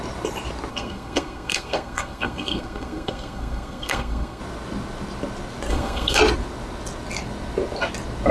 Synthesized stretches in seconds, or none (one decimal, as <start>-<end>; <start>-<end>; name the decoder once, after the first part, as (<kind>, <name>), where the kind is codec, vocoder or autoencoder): 0.7-4.4 (codec, SNAC); 5.7-6.2